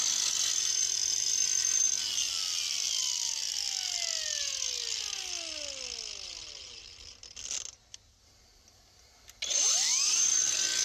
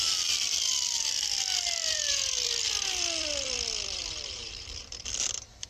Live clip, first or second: first